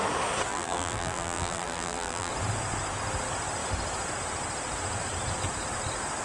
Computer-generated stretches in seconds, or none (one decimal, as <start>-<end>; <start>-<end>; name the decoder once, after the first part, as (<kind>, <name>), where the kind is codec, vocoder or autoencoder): 0.5-2.3 (vocoder, BigVGAN v2)

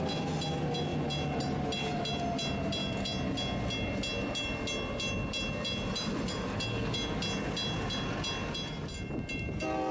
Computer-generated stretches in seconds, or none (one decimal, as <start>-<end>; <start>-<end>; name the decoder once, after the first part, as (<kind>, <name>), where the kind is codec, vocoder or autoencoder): none

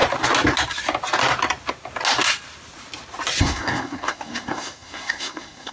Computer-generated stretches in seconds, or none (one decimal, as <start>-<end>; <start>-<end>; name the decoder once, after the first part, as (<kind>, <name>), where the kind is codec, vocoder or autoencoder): 3.4-5.7 (codec, SNAC)

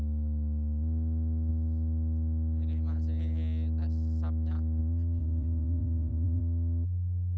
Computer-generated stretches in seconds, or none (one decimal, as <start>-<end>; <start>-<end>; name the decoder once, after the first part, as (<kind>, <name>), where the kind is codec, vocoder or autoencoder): 5.2-6.4 (vocoder, Vocos)

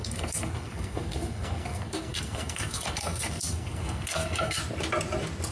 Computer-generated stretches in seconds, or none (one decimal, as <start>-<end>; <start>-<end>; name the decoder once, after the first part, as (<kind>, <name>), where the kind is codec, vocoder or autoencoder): 0.0-4.6 (codec, SNAC)

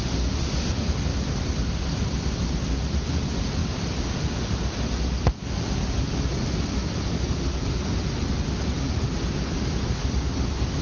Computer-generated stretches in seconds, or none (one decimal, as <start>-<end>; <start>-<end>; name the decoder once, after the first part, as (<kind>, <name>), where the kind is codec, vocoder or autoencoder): none